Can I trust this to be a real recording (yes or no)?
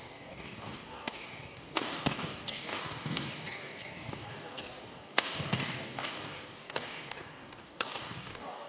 no